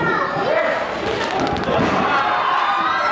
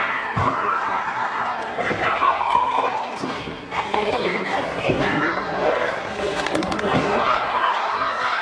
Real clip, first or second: first